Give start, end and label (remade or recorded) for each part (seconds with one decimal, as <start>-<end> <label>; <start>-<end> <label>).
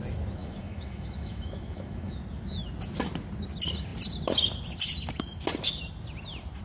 0.0-0.4 recorded; 0.4-2.2 remade; 2.2-6.6 recorded